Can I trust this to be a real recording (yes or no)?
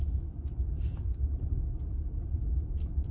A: yes